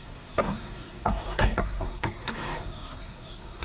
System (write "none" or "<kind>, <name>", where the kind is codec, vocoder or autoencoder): codec, SNAC